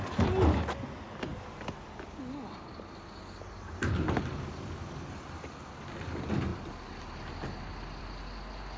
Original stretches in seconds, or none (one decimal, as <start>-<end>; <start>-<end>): 0.0-8.8